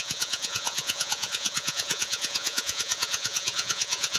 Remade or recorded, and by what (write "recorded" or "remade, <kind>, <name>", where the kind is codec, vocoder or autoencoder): remade, vocoder, Vocos